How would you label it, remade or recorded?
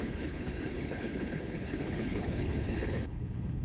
remade